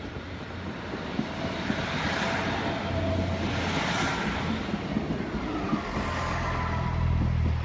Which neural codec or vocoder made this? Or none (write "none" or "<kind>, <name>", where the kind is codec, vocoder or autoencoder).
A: none